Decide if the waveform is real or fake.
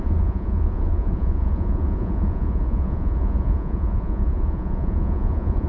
fake